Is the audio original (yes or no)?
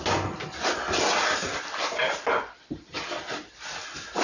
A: yes